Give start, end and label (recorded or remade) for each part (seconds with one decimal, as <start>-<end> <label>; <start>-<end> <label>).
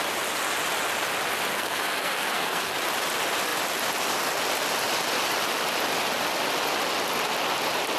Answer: 0.0-1.5 recorded; 1.5-2.7 remade; 2.7-8.0 recorded